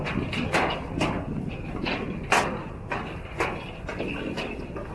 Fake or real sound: real